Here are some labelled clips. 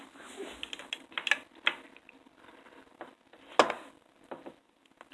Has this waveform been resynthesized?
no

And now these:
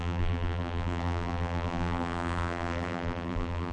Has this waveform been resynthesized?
yes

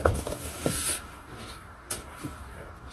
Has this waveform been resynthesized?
yes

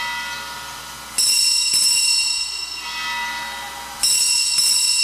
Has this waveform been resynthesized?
no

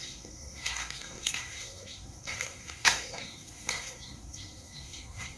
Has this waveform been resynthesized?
yes